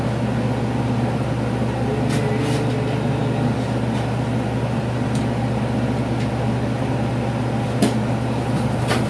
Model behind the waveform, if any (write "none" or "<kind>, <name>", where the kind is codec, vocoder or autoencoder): none